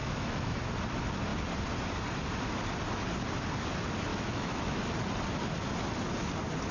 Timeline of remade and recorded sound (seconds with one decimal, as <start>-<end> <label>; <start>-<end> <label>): 0.0-0.6 remade; 0.6-4.1 recorded; 4.1-4.8 remade; 4.8-6.7 recorded